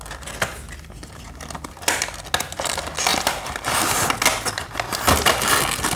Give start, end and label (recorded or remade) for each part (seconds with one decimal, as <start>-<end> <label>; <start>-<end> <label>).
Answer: 0.0-6.0 recorded

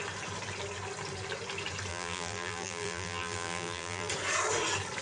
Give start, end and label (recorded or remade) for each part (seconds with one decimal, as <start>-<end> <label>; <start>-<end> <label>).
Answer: 0.0-1.9 recorded; 1.9-4.1 remade; 4.1-5.0 recorded

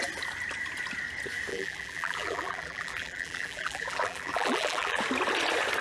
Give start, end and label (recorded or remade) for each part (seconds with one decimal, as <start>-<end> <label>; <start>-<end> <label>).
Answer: 0.0-1.5 recorded; 1.5-5.0 remade; 5.0-5.8 recorded

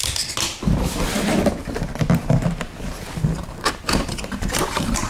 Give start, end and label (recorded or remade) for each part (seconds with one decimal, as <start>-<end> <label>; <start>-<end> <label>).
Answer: 0.0-1.6 recorded; 1.6-5.1 remade

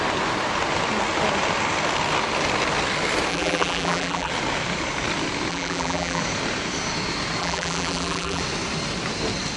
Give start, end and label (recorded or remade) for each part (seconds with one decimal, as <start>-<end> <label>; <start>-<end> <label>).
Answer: 0.0-3.3 recorded; 3.3-4.3 remade; 4.3-5.5 recorded; 5.5-6.2 remade; 6.2-7.4 recorded; 7.4-8.4 remade; 8.4-9.6 recorded